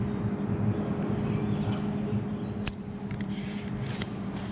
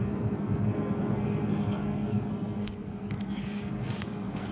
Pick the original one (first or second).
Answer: first